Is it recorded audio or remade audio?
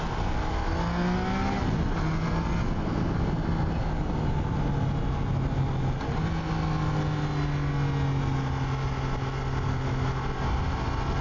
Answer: recorded